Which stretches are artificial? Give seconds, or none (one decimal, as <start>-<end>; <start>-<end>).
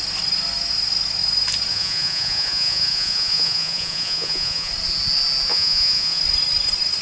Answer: 1.7-4.7; 5.5-6.2